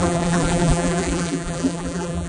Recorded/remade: remade